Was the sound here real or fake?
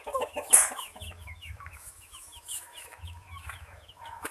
fake